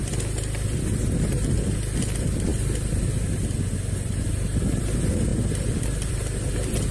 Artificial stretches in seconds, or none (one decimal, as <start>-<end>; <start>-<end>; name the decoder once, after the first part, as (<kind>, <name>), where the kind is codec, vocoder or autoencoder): none